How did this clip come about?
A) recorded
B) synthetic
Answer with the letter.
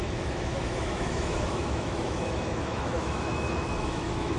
B